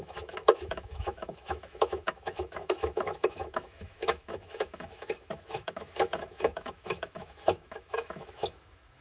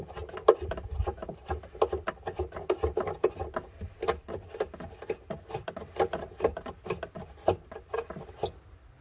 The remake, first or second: first